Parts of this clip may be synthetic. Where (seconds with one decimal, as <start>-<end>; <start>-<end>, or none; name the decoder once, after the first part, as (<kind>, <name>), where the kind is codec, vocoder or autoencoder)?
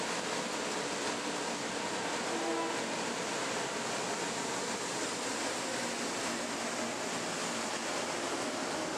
none